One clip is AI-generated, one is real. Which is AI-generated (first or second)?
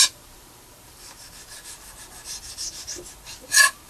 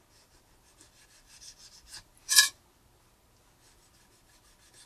first